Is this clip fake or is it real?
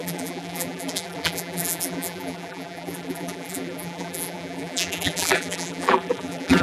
fake